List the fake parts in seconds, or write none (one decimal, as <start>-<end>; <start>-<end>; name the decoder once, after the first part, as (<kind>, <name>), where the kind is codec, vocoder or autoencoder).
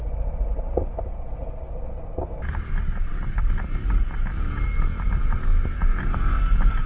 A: none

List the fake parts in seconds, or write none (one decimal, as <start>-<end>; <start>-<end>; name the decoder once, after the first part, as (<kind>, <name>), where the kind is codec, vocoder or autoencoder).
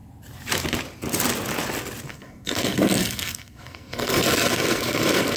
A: 2.1-5.4 (codec, SNAC)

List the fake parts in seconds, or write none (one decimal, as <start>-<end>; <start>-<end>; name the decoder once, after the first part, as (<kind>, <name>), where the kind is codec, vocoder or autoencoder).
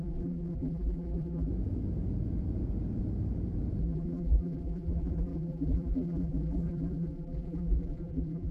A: 0.0-1.5 (vocoder, BigVGAN v2); 3.8-8.5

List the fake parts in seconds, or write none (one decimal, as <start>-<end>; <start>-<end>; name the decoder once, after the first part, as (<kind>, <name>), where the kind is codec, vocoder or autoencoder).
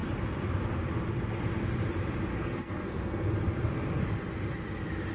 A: 2.3-3.3 (codec, SNAC)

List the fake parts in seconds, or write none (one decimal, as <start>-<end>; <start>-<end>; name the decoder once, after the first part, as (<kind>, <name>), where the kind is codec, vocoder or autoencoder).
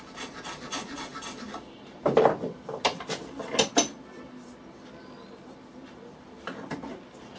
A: none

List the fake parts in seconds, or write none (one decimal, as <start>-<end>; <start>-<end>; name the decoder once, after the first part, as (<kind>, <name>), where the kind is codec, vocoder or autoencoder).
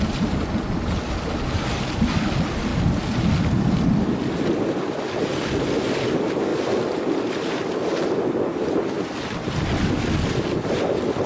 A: none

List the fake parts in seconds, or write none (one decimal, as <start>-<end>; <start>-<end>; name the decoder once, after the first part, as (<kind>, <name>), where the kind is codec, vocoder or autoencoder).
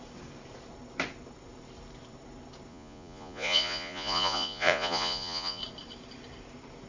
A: 2.7-5.6 (vocoder, Vocos)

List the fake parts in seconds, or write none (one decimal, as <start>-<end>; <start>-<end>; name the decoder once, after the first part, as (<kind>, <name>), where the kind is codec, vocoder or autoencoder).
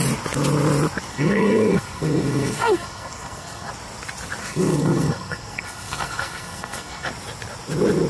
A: 1.1-3.7 (codec, SNAC); 4.4-7.1